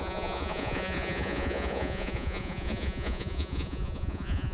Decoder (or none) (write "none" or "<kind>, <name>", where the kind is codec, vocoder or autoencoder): vocoder, Vocos